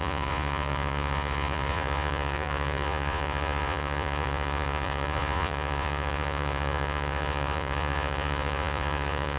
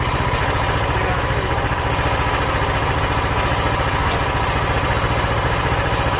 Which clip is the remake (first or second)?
first